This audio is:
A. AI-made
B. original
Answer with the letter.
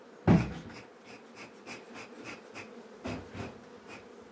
B